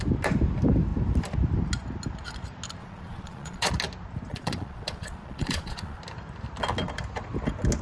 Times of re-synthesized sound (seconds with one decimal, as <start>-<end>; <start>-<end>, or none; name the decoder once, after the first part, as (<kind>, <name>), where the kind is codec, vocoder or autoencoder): 2.8-3.7 (vocoder, Vocos); 4.3-6.0